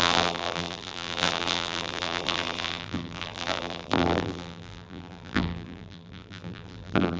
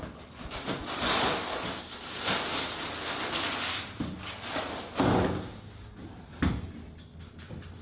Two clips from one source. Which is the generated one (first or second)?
first